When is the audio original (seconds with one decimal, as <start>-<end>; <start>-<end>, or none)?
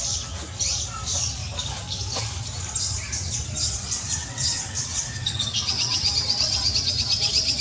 0.0-4.2; 6.1-7.6